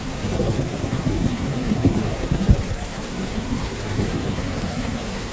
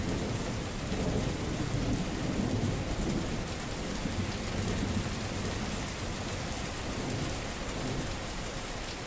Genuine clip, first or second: second